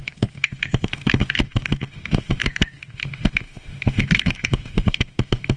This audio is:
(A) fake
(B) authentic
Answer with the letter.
A